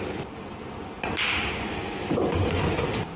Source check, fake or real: real